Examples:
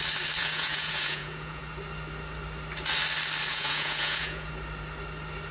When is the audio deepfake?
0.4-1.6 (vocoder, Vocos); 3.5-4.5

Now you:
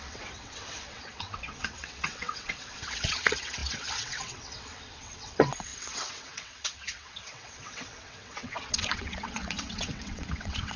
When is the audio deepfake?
0.0-10.8 (vocoder, WaveNeXt)

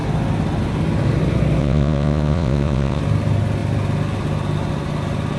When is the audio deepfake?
1.6-3.0 (vocoder, Vocos)

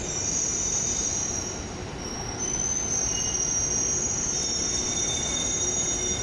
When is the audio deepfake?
0.5-2.3 (vocoder, BigVGAN v2); 4.6-5.5

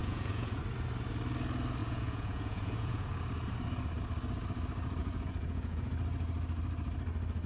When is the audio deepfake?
0.0-0.6 (vocoder, Vocos); 1.8-3.2; 5.0-5.9